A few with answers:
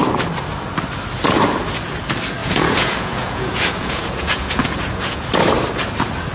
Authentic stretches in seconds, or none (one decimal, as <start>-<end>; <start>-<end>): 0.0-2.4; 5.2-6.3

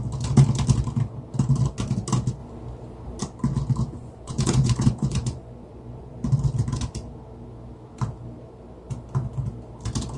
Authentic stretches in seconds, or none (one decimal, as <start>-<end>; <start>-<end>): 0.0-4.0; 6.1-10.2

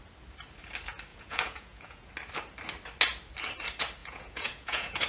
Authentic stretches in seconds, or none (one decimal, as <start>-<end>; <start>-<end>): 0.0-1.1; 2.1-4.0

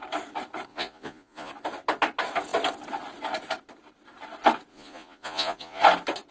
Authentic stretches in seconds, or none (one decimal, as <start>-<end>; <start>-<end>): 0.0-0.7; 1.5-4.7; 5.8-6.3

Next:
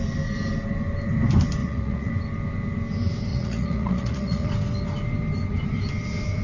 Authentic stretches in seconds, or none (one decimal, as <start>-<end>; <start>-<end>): 0.0-1.6; 2.1-3.3; 4.5-6.4